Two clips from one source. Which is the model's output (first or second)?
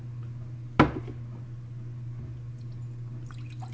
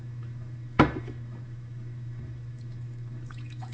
second